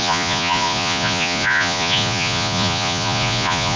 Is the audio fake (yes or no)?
yes